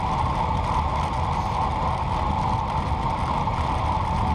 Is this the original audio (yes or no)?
yes